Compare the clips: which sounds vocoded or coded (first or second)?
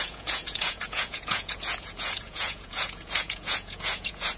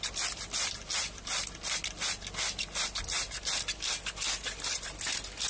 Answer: first